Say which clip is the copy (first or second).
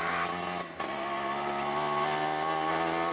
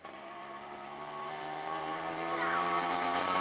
second